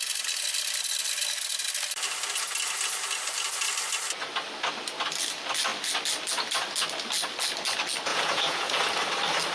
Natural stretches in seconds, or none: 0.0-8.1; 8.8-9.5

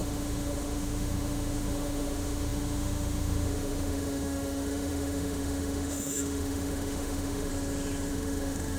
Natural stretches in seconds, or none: 7.5-8.1

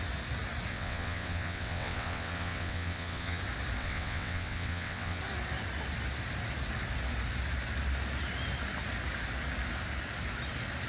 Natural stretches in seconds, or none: 0.0-0.7; 3.4-3.8; 5.2-10.9